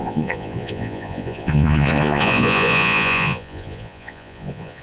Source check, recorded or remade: remade